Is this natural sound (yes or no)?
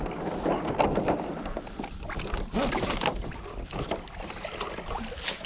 yes